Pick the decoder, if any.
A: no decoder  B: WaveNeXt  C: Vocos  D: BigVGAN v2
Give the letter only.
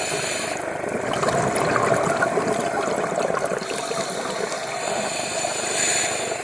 A